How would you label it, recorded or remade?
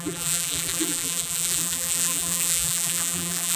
remade